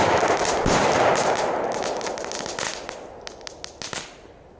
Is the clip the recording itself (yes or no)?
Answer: yes